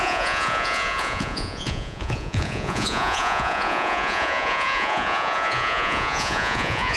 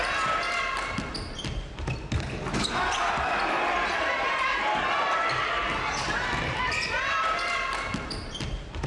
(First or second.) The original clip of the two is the second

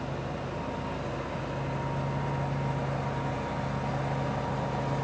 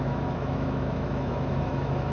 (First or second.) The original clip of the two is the first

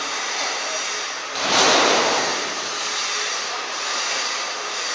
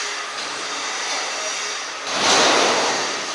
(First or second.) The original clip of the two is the second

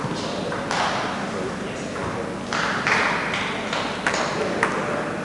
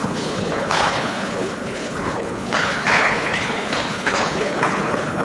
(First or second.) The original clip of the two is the first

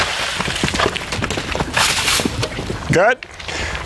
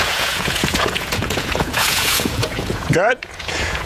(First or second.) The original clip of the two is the first